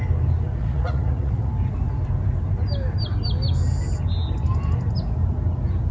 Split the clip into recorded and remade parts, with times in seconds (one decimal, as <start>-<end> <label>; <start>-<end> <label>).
0.0-0.6 recorded; 0.6-1.5 remade; 1.5-5.9 recorded